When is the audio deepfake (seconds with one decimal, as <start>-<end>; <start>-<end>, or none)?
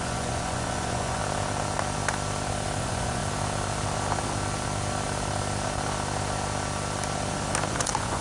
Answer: 0.0-1.2; 2.8-3.2; 7.7-8.2